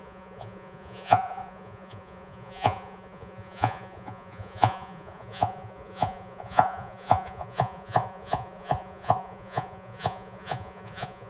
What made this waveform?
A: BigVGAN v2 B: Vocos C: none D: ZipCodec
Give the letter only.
B